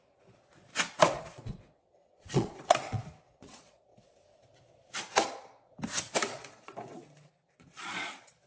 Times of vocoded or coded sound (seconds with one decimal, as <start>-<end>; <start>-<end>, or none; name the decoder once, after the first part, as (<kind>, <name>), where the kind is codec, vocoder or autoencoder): 0.0-0.7 (vocoder, Vocos); 1.2-3.9; 6.3-8.5